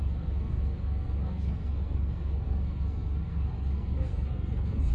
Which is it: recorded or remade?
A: remade